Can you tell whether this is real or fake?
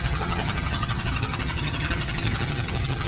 fake